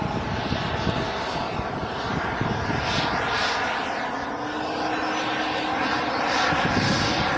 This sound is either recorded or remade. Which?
recorded